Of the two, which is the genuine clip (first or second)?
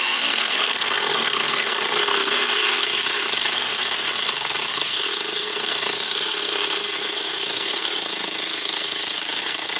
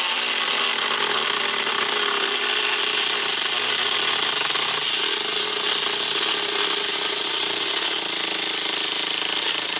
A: second